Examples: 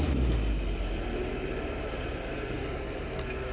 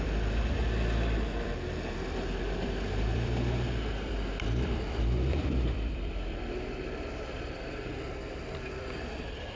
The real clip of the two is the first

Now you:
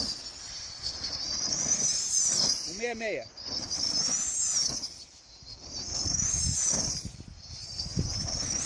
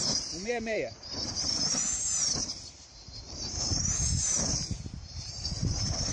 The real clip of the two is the first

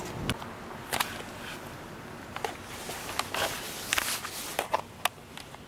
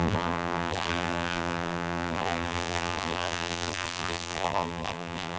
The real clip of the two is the first